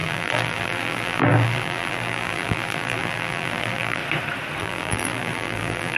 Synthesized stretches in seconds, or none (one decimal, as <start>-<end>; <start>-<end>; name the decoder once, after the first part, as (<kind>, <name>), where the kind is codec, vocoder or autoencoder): 0.0-4.0 (vocoder, BigVGAN v2); 4.6-6.0